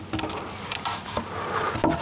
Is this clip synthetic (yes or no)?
no